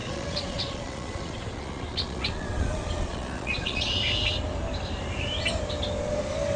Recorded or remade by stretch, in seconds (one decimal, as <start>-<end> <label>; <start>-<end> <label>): 0.0-4.0 remade; 4.0-6.6 recorded